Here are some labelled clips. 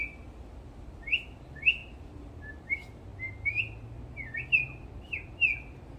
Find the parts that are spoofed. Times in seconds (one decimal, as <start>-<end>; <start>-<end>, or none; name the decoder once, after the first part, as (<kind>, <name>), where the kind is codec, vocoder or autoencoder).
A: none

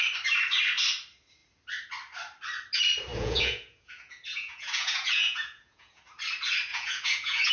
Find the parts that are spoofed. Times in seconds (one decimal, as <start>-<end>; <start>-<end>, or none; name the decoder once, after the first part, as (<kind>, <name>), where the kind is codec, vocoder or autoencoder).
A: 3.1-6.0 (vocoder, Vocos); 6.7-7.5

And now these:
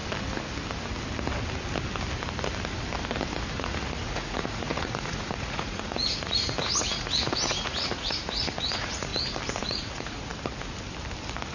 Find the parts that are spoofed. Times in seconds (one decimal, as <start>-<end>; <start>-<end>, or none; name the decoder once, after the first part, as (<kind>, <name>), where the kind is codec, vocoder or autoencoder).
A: 3.5-9.1 (vocoder, Vocos); 9.6-10.3

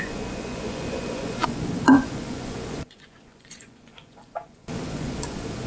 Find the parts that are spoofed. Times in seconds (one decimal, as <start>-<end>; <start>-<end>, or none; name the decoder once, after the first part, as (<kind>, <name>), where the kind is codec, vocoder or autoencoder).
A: 0.0-5.7 (vocoder, Vocos)

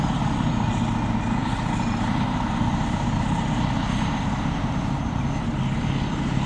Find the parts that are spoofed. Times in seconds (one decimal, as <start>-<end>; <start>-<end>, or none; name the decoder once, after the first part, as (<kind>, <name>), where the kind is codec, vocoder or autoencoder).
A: 1.4-5.3 (vocoder, BigVGAN v2)

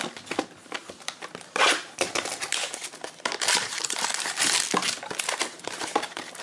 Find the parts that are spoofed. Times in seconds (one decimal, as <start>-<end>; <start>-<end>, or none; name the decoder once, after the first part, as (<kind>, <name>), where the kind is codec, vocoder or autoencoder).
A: none

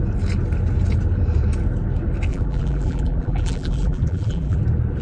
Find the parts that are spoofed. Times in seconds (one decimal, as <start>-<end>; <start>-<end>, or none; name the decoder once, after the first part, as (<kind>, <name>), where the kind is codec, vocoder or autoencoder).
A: 2.3-4.6 (vocoder, BigVGAN v2)

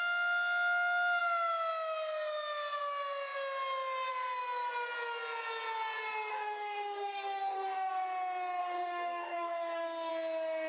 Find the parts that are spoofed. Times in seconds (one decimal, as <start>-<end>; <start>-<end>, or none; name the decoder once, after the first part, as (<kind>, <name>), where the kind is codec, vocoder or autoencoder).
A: 6.3-7.9 (codec, DAC); 8.6-10.1